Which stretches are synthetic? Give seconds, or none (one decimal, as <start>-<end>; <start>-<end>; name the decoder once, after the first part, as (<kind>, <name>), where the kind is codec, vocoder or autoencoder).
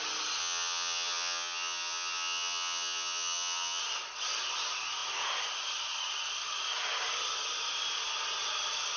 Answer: 0.4-3.8 (vocoder, HiFi-GAN)